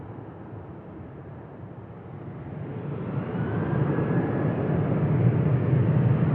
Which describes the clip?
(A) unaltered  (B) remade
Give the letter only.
A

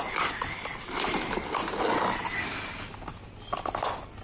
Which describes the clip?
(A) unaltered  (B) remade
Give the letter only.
A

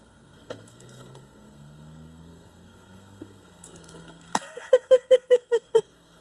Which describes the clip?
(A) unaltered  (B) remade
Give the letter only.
B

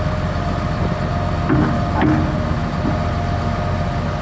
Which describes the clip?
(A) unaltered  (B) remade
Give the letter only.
A